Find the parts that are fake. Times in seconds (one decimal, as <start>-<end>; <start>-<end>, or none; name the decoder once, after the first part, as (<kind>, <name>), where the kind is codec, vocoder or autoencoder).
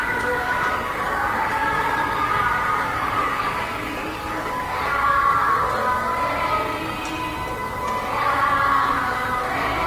0.0-6.1 (codec, DAC); 8.2-9.9